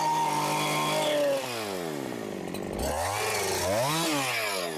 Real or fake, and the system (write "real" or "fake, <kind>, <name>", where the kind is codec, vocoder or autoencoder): real